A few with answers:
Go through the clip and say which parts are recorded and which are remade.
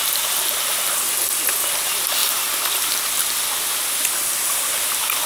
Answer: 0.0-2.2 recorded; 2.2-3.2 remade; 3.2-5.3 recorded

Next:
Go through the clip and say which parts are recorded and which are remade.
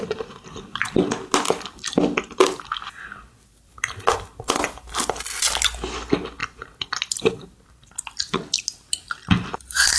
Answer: 0.0-10.0 recorded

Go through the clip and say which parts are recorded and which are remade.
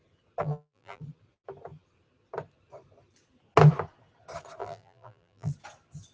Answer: 0.0-0.4 recorded; 0.4-1.0 remade; 1.0-4.6 recorded; 4.6-5.5 remade; 5.5-6.1 recorded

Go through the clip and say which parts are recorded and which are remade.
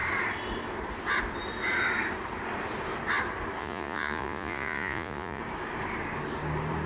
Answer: 0.0-3.6 recorded; 3.6-5.4 remade; 5.4-6.9 recorded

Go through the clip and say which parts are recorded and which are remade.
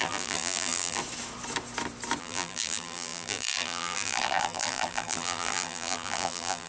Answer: 0.0-1.0 remade; 1.0-2.2 recorded; 2.2-6.7 remade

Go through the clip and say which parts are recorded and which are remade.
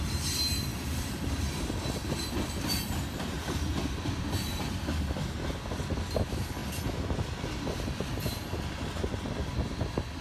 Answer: 0.0-10.2 recorded